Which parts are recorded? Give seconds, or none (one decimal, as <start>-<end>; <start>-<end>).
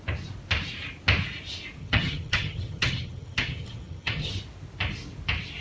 0.0-1.8; 4.3-5.6